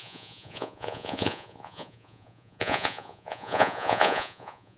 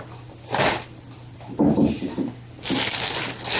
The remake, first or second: first